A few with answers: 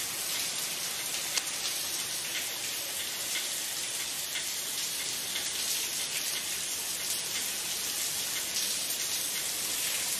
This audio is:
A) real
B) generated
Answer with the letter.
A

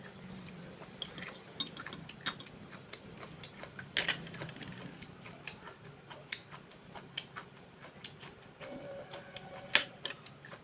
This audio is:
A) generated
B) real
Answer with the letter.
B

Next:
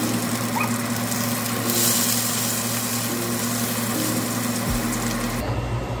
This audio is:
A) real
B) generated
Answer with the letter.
A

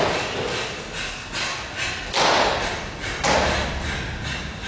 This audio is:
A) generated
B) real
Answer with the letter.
B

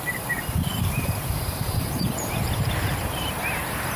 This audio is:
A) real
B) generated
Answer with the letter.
B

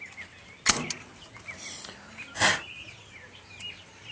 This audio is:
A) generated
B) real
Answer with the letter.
B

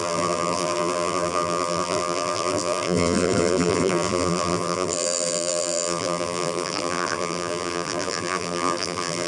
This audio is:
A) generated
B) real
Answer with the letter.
A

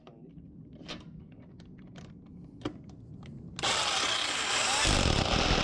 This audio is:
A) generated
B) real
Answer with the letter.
B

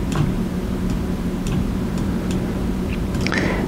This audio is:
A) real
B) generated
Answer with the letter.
B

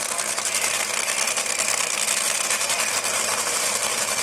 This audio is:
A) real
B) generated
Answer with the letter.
A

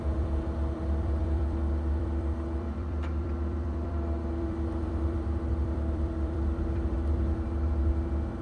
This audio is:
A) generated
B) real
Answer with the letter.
A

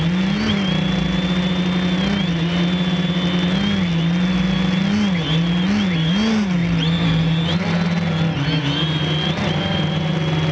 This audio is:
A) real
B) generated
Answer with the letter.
A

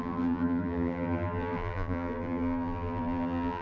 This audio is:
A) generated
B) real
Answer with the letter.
A